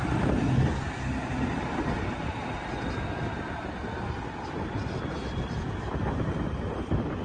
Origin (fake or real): fake